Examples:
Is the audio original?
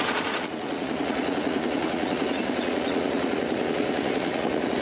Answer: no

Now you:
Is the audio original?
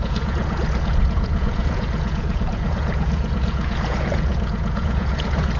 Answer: no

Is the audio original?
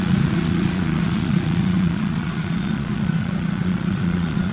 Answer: no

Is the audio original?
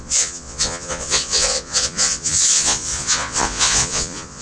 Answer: no